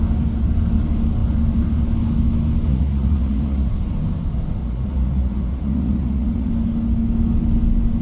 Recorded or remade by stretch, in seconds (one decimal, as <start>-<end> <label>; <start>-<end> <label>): 0.0-2.7 recorded; 2.7-3.7 remade; 3.7-4.6 recorded; 4.6-6.5 remade; 6.5-8.0 recorded

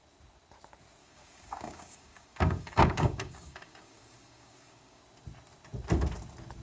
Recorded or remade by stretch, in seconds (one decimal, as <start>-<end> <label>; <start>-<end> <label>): 0.0-1.0 recorded; 1.0-5.0 remade; 5.0-6.6 recorded

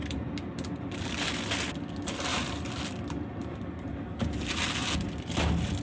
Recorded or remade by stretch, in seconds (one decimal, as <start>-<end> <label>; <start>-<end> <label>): 0.0-1.3 remade; 1.3-2.3 recorded; 2.3-4.2 remade; 4.2-5.8 recorded

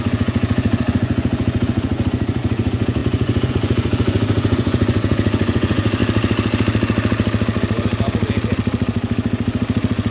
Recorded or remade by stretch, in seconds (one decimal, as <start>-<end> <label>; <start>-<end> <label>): 0.0-6.0 remade; 6.0-10.1 recorded

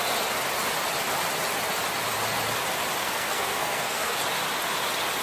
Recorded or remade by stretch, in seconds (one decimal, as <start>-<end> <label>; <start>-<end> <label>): 0.0-3.0 recorded; 3.0-4.2 remade; 4.2-5.2 recorded

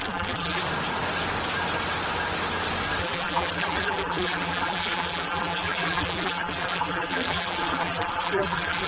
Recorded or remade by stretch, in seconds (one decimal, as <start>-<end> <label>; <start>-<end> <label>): 0.0-0.6 remade; 0.6-3.0 recorded; 3.0-8.9 remade